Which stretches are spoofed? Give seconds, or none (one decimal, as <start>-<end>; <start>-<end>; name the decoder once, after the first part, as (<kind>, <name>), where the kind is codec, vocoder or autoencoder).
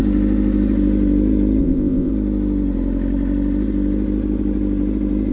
1.6-2.1 (codec, ZipCodec)